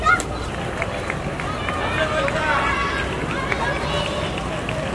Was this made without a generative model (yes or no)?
yes